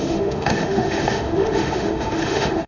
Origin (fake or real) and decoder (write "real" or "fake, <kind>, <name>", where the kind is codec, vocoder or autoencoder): fake, autoencoder, DAC-VAE